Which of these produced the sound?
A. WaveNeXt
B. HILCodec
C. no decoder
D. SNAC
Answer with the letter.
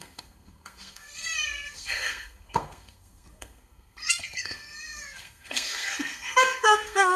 D